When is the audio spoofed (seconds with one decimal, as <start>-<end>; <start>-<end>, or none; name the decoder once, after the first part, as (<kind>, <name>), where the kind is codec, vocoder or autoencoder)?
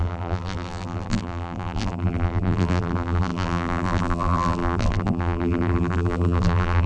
0.0-6.9 (vocoder, BigVGAN v2)